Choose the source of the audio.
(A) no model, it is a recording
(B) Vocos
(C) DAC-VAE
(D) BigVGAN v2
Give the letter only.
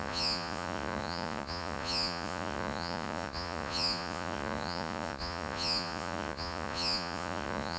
B